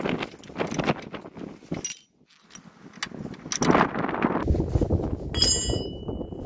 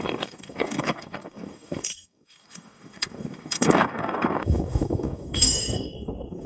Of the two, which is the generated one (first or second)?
second